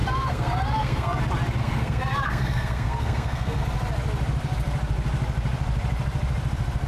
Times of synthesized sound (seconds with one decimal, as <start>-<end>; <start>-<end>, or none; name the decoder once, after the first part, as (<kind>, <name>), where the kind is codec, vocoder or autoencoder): 0.0-1.2 (codec, SNAC); 1.6-3.6